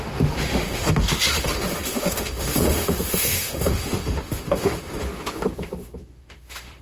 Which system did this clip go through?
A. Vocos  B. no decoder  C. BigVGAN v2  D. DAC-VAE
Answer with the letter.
D